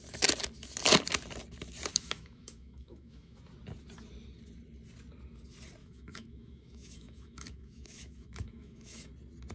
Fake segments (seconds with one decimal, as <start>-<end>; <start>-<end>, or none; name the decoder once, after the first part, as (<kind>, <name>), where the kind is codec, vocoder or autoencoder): 1.9-3.4 (autoencoder, DAC-VAE); 5.8-9.1